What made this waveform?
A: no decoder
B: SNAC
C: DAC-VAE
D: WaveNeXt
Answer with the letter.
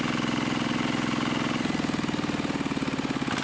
A